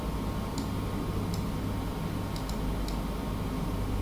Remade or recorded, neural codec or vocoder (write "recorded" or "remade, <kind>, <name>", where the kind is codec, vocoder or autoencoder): recorded